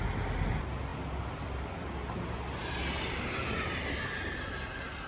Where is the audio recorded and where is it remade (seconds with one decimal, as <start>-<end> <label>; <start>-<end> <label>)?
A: 0.0-5.1 recorded